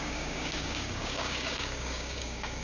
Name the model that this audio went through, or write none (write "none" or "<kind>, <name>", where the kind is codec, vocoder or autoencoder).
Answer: codec, DAC